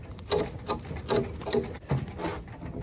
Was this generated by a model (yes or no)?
no